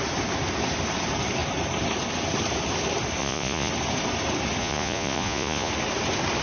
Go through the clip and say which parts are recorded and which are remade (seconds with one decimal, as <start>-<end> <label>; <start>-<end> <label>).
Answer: 0.0-3.2 recorded; 3.2-3.7 remade; 3.7-4.6 recorded; 4.6-5.7 remade; 5.7-6.4 recorded